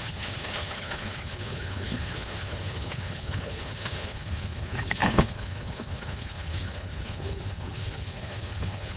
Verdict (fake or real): fake